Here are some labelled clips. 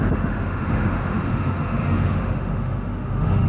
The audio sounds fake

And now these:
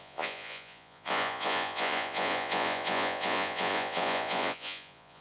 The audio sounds fake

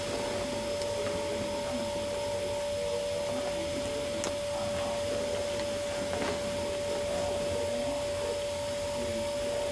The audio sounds real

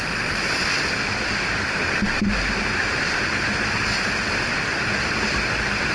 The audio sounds real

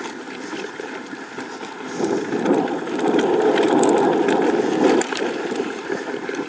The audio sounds fake